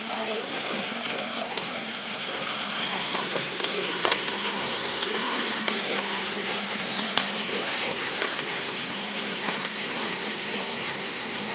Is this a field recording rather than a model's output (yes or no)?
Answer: no